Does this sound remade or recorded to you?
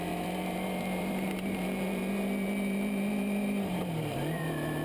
remade